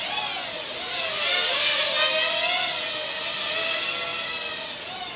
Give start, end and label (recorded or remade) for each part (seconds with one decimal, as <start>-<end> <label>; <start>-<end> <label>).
0.0-5.2 recorded